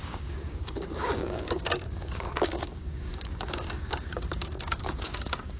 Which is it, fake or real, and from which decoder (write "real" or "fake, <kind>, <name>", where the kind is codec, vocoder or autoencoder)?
fake, codec, DAC